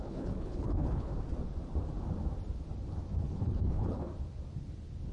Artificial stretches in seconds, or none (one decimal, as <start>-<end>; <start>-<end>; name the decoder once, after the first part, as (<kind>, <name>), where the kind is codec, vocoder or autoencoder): 0.0-1.1 (codec, HILCodec); 3.2-4.1